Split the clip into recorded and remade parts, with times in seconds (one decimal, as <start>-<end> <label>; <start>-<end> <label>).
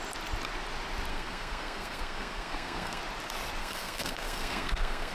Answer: 0.0-1.1 recorded; 1.1-3.0 remade; 3.0-3.6 recorded; 3.6-5.1 remade